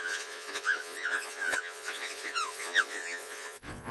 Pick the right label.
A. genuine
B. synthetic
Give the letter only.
B